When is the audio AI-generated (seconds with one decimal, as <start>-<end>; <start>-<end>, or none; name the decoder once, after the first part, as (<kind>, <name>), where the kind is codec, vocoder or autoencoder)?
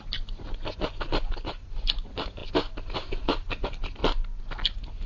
0.0-2.4 (vocoder, BigVGAN v2); 3.1-4.0